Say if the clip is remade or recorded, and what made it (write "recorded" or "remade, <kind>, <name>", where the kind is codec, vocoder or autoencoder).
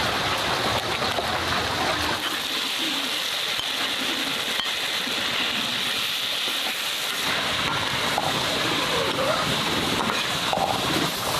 recorded